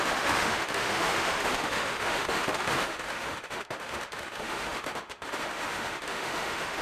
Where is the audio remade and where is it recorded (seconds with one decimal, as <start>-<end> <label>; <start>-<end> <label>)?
0.0-6.8 remade